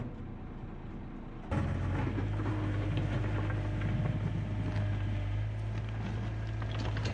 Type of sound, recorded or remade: recorded